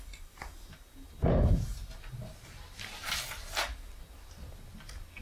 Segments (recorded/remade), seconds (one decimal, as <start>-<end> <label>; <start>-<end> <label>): 0.0-5.2 recorded